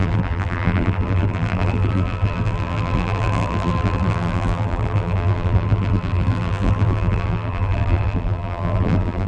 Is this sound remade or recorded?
remade